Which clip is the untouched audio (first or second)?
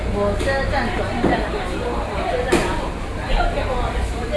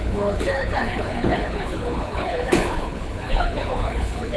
first